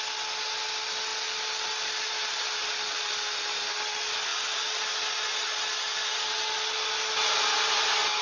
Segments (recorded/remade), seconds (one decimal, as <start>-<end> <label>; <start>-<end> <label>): 0.0-8.2 recorded